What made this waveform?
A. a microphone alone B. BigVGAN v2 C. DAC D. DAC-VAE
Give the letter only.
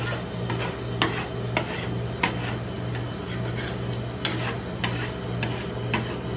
A